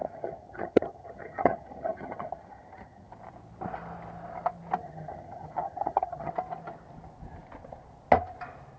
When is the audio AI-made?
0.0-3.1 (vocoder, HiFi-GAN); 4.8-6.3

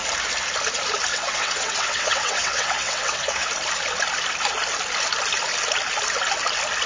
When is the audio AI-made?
1.1-3.5 (vocoder, WaveNeXt)

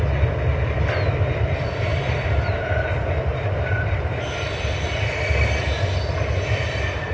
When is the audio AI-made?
1.9-4.3 (vocoder, BigVGAN v2)